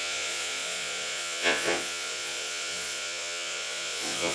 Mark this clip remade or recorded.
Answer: remade